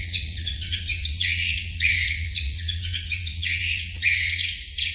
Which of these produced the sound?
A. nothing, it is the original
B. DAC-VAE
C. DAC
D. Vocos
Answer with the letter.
D